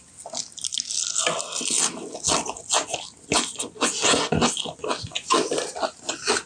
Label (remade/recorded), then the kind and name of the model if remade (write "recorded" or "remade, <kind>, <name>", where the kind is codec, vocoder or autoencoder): recorded